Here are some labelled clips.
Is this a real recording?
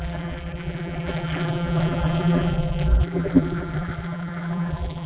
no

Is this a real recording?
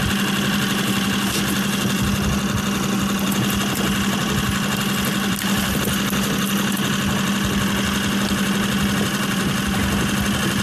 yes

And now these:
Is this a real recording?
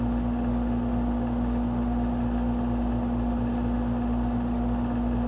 yes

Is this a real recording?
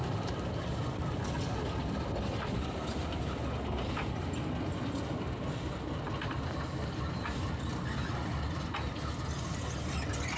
yes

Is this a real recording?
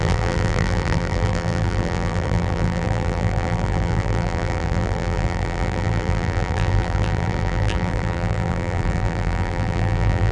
no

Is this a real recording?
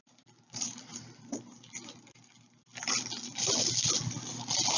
yes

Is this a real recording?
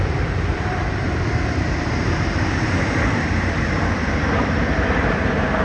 no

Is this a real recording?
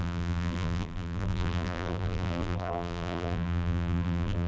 no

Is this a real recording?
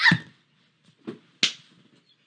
yes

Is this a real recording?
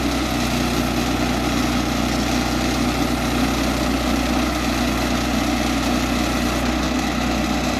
yes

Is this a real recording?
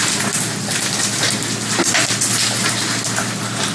yes